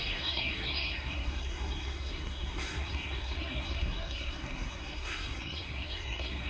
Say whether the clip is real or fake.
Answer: fake